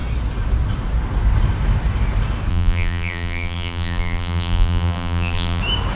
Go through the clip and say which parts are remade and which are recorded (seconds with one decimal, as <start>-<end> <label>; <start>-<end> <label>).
0.0-2.5 recorded; 2.5-5.6 remade; 5.6-6.0 recorded